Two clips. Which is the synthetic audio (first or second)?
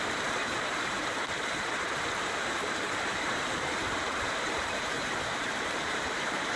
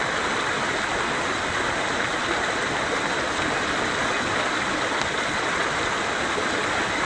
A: first